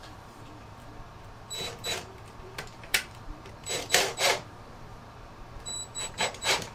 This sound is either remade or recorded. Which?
remade